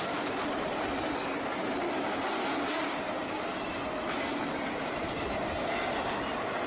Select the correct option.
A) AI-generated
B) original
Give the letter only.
B